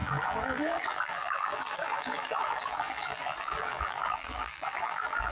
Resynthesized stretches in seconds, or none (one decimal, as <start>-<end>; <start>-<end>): 0.0-5.3